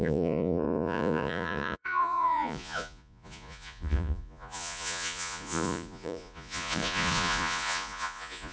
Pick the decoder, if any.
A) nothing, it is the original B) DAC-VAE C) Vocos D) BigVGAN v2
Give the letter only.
C